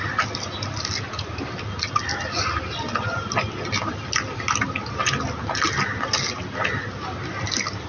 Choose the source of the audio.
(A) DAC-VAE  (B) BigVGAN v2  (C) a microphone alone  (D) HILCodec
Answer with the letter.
C